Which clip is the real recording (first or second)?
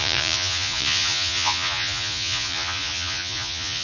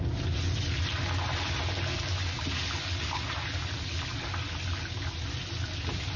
second